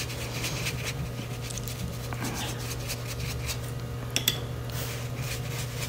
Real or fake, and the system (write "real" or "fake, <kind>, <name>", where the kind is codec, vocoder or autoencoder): real